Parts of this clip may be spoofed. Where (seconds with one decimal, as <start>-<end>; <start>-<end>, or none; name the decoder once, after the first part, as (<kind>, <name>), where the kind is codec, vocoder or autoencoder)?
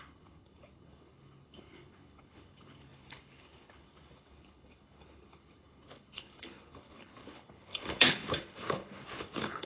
0.0-9.7 (codec, HILCodec)